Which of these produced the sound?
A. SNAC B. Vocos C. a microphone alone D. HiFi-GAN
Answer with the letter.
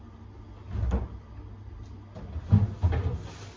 C